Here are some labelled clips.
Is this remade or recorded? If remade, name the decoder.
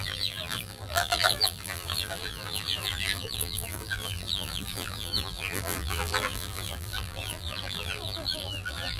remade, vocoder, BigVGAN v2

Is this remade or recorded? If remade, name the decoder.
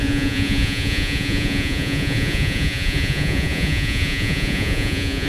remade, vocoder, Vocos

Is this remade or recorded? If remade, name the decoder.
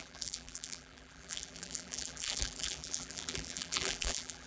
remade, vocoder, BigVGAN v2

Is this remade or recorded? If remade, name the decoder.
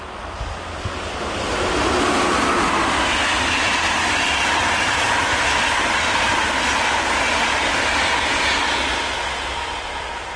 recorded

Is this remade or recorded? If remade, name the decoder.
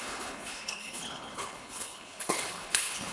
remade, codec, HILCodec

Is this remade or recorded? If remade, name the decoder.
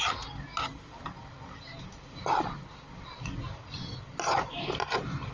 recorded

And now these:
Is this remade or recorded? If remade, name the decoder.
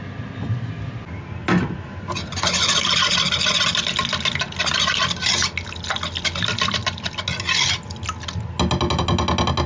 recorded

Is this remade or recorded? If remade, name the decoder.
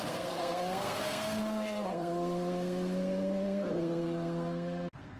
remade, codec, SNAC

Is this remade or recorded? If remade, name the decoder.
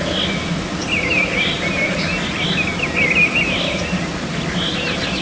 recorded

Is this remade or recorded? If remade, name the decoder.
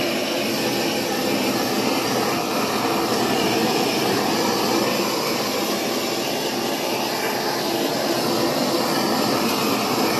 recorded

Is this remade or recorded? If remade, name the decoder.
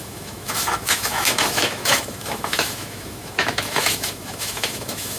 remade, autoencoder, DAC-VAE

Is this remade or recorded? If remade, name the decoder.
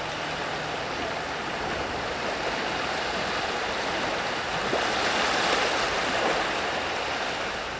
recorded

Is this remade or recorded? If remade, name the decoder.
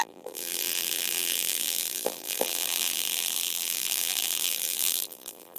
remade, vocoder, BigVGAN v2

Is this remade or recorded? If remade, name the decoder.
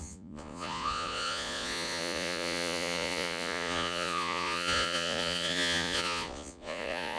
remade, vocoder, Vocos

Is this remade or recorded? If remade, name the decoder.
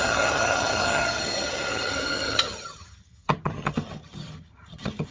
remade, vocoder, HiFi-GAN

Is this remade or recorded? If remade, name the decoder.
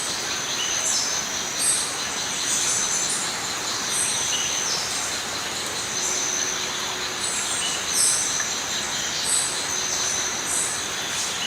recorded